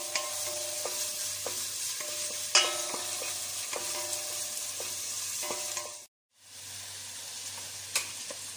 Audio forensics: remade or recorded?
recorded